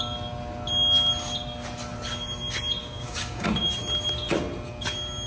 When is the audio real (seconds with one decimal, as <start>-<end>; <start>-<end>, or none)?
0.0-2.8; 3.5-5.3